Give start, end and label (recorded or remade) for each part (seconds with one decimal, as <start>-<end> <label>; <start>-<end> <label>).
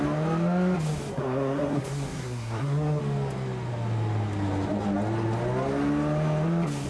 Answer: 0.0-1.1 recorded; 1.1-3.0 remade; 3.0-6.9 recorded